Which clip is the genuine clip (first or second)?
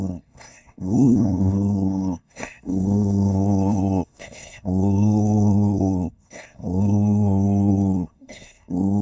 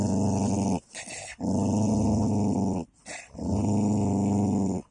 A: second